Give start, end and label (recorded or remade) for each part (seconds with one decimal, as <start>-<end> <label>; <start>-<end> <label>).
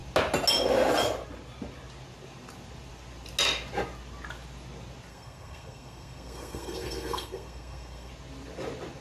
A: 0.0-5.1 recorded; 5.1-8.1 remade; 8.1-9.0 recorded